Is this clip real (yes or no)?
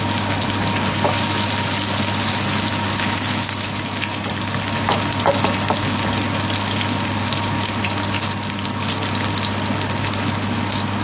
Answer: yes